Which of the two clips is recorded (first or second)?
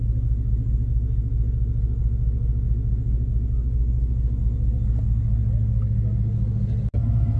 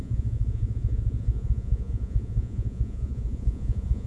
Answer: first